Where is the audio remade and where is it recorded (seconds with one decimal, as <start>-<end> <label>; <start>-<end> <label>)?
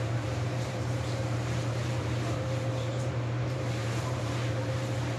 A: 0.0-5.2 remade